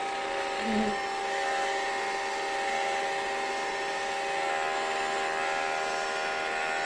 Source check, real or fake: real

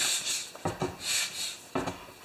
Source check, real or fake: real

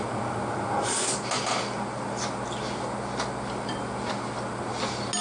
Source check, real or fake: real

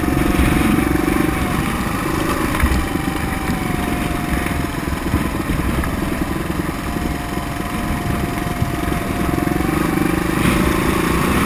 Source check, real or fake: real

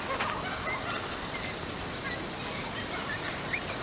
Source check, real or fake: real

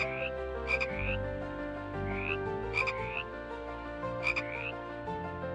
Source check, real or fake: real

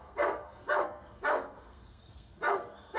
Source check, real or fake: fake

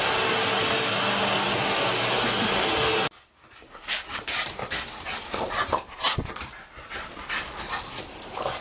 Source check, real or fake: real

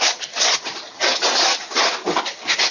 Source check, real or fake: real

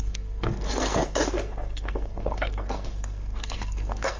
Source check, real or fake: fake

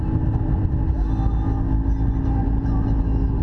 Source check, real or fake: real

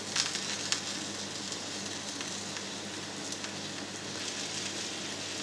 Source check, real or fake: real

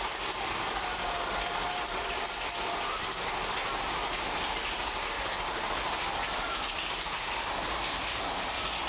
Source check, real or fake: real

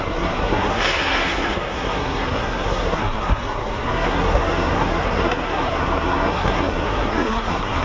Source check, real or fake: fake